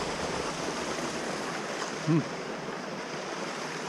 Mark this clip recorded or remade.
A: recorded